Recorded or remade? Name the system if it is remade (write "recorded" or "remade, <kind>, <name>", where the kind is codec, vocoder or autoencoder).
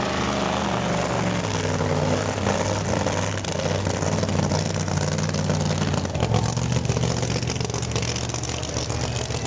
recorded